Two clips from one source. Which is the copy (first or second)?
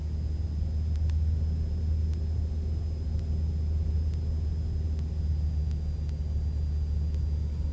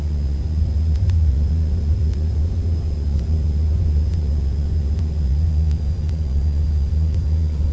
second